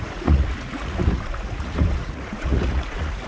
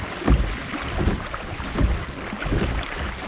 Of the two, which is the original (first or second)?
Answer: second